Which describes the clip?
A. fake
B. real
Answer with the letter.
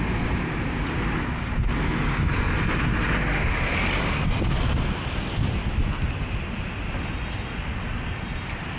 B